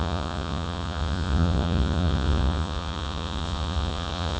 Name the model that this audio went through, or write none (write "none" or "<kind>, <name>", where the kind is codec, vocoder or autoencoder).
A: vocoder, Vocos